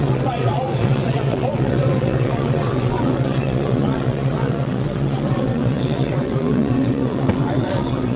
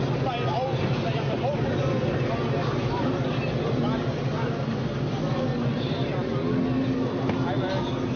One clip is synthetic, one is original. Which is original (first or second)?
second